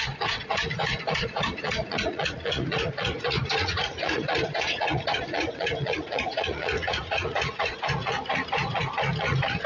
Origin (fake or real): fake